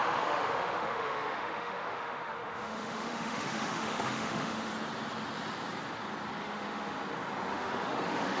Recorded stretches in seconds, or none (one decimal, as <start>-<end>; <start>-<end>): 4.7-6.4; 7.0-7.5